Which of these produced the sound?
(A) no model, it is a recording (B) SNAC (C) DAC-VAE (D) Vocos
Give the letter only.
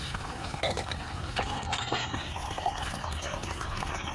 B